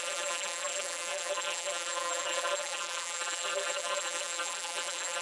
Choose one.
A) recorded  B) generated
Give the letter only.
B